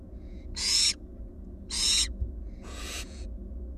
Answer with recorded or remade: remade